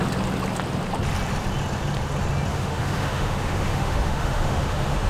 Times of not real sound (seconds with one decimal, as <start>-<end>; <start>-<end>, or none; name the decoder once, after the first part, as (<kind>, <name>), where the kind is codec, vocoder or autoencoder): 2.5-5.1 (autoencoder, DAC-VAE)